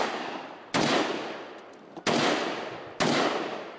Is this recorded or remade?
recorded